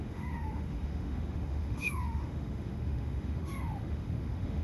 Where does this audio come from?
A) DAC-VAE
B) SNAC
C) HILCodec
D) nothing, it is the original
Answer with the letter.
A